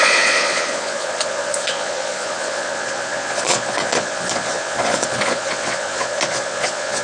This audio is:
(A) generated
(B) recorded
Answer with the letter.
A